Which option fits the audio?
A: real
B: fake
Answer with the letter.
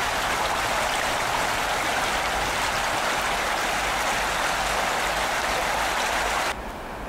A